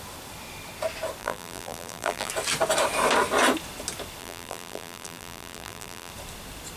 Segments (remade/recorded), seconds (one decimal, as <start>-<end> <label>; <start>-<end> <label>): 0.0-1.2 recorded; 1.2-2.3 remade; 2.3-4.2 recorded; 4.2-6.1 remade; 6.1-6.8 recorded